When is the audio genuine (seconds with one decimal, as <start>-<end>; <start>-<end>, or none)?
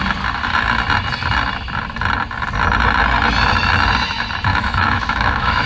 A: 0.0-4.5